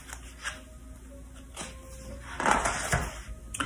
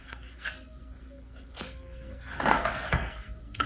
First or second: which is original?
first